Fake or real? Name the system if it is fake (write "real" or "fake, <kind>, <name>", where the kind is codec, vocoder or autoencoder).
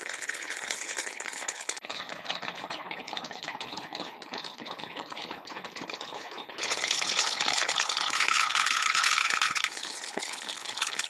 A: fake, codec, HILCodec